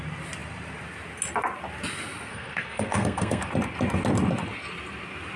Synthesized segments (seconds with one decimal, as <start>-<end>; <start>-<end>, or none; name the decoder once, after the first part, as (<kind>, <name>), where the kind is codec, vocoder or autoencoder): 2.3-3.5 (codec, SNAC)